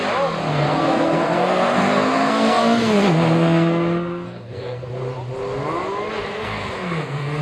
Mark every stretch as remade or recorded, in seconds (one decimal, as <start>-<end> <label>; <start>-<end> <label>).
0.0-0.5 recorded; 0.5-4.9 remade; 4.9-6.3 recorded; 6.3-7.4 remade